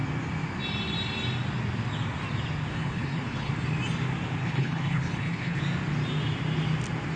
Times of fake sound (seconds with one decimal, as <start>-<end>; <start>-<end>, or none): 2.7-3.5; 4.4-5.6